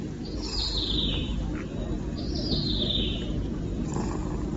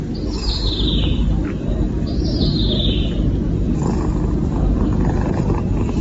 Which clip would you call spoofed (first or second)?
second